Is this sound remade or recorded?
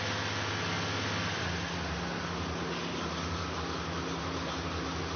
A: recorded